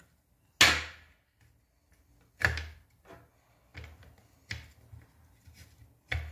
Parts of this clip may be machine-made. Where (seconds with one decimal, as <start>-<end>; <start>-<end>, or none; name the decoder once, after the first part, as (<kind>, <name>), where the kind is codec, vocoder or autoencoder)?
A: none

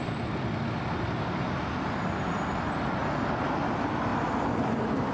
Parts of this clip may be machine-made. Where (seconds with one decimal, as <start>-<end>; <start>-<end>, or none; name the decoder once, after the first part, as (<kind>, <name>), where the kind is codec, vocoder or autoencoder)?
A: 0.0-1.6 (vocoder, BigVGAN v2); 2.3-3.0; 3.6-4.1

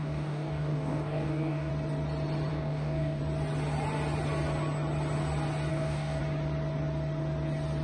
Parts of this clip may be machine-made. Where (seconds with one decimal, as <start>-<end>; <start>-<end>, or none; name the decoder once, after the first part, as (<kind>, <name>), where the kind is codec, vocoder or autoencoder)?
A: 0.0-1.7 (codec, DAC); 2.5-3.2; 5.7-6.2

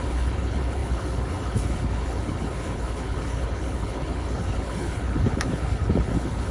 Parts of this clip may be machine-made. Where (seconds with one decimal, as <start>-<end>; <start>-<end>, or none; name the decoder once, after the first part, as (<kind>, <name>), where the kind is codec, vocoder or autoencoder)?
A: 0.0-6.5 (codec, HILCodec)

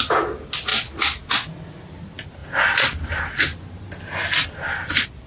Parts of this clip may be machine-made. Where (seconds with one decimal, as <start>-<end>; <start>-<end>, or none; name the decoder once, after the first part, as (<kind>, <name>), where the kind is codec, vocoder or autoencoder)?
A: none

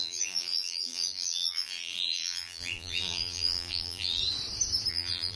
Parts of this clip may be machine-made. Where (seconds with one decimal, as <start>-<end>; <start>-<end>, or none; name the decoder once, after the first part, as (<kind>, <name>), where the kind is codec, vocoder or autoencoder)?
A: 0.0-4.2 (vocoder, BigVGAN v2); 4.9-5.4

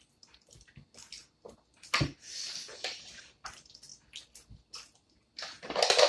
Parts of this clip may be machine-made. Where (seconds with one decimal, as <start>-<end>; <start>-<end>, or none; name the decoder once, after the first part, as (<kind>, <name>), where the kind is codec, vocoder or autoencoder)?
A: none